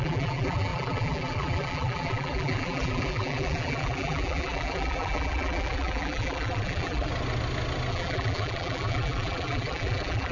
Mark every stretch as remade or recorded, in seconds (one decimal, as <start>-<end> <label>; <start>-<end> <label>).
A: 0.0-7.1 remade; 7.1-7.9 recorded; 7.9-10.3 remade